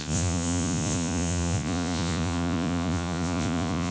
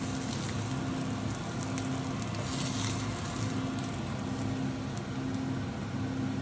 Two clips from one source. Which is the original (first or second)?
second